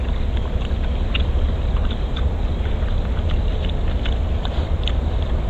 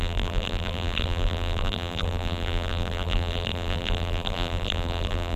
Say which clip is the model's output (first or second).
second